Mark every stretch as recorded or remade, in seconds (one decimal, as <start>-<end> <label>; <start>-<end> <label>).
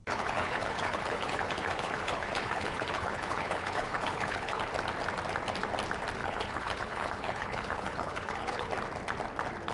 0.0-4.6 remade; 4.6-6.2 recorded; 6.2-8.7 remade; 8.7-9.7 recorded